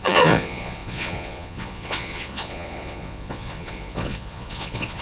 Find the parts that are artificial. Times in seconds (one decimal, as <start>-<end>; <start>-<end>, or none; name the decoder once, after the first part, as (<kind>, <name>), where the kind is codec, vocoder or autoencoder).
0.0-5.0 (vocoder, Vocos)